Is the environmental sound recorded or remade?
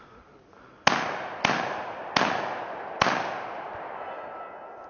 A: recorded